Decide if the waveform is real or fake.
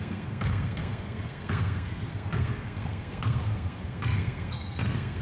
fake